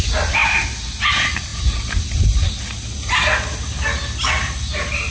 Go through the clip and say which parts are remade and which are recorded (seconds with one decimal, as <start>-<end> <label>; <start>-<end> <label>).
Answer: 0.0-5.1 recorded